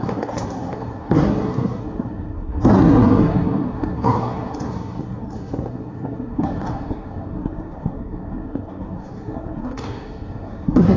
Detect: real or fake fake